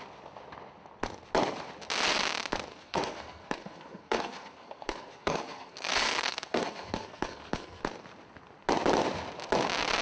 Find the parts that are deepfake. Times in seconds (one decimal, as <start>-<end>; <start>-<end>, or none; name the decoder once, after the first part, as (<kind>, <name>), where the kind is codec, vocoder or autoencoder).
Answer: 2.7-7.8 (codec, SNAC)